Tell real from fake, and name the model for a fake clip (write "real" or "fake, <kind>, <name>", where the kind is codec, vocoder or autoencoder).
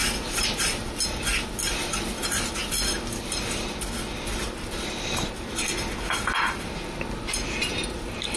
real